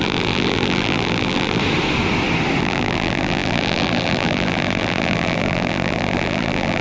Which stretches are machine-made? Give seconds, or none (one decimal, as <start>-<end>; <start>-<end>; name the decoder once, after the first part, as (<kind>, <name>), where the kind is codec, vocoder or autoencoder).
0.0-1.6 (vocoder, BigVGAN v2); 2.6-6.8